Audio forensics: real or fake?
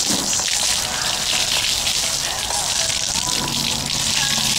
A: real